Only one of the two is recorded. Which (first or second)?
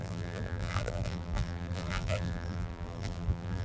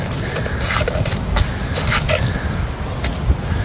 second